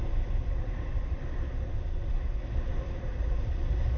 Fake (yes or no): no